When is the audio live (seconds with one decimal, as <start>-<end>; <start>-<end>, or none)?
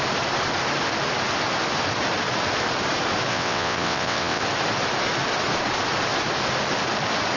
0.0-3.3; 4.4-7.4